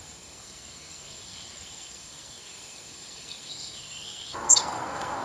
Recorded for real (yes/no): no